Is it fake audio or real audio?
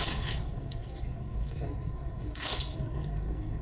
fake